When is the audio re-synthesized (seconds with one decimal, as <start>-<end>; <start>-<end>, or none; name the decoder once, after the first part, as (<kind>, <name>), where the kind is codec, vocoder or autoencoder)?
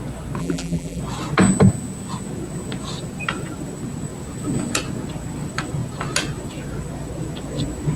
0.4-1.0 (vocoder, BigVGAN v2)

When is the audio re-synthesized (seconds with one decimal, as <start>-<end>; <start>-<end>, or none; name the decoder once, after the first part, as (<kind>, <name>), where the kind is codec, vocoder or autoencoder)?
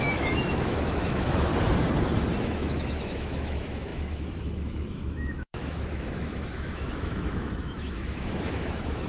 0.0-1.5 (autoencoder, DAC-VAE); 2.4-9.1